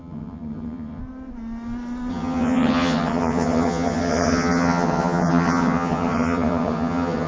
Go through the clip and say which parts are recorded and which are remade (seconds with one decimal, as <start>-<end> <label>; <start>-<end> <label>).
0.0-1.0 remade; 1.0-2.1 recorded; 2.1-7.3 remade